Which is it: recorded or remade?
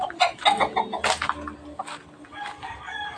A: recorded